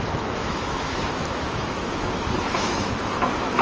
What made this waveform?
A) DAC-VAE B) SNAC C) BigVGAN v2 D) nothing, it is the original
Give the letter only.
A